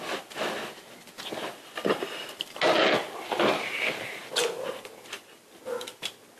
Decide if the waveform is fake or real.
real